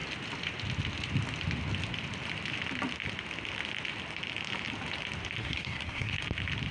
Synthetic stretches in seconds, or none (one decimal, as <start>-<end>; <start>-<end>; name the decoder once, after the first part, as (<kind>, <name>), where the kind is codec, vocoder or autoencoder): 5.4-6.2 (codec, SNAC)